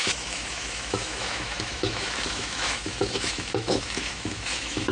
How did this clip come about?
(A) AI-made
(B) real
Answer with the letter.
A